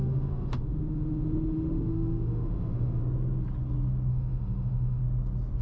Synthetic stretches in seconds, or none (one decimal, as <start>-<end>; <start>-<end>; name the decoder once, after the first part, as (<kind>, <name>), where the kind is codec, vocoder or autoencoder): 0.0-3.0 (autoencoder, DAC-VAE); 4.1-5.0